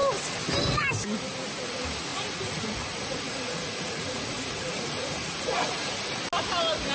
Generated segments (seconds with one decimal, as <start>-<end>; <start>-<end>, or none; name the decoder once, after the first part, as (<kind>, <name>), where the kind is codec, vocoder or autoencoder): 2.1-6.2 (vocoder, Vocos)